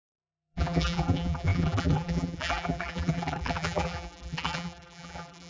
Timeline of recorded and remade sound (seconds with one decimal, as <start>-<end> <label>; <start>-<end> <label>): 0.0-5.5 remade